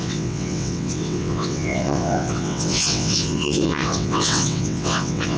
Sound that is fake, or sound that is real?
fake